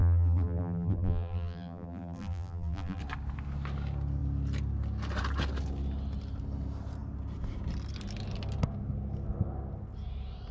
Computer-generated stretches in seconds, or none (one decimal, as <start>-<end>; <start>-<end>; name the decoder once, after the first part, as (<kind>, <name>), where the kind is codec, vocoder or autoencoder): 0.0-3.0 (vocoder, BigVGAN v2)